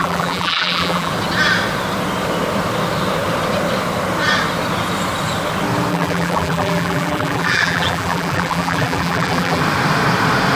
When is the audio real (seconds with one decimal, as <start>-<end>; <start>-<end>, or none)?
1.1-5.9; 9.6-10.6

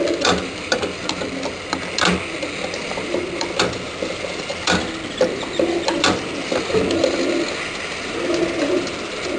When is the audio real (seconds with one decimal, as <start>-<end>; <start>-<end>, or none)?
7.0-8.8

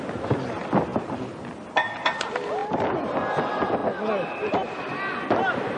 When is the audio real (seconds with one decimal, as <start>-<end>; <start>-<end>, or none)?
0.0-0.9; 1.4-5.8